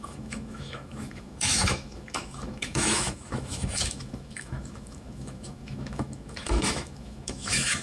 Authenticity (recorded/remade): remade